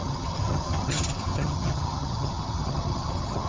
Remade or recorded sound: remade